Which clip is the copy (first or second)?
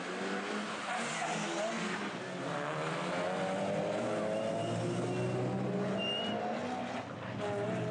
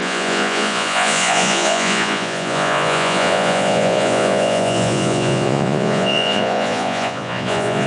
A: second